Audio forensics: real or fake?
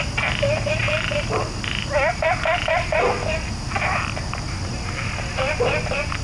real